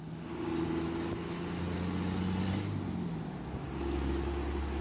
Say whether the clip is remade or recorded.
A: recorded